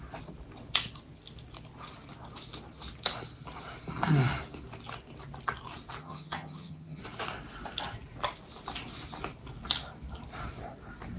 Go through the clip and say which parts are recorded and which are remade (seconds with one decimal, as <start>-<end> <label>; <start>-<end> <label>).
0.0-6.0 recorded; 6.0-7.0 remade; 7.0-11.2 recorded